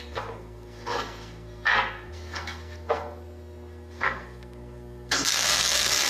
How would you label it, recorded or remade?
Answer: remade